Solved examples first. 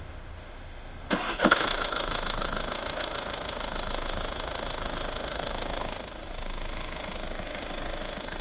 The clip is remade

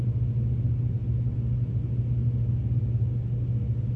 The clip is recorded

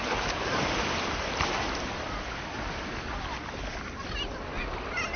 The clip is recorded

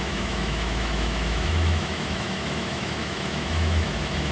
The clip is remade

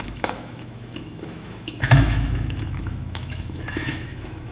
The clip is remade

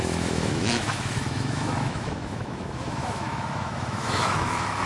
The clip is remade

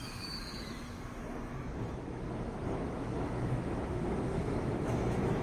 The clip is remade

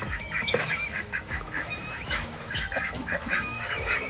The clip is remade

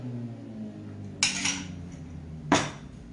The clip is recorded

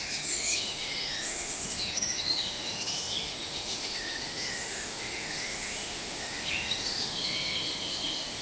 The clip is remade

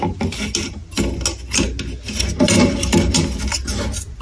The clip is recorded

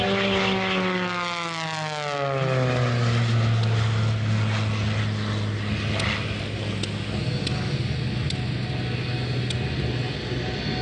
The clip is recorded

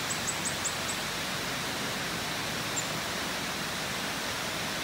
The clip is recorded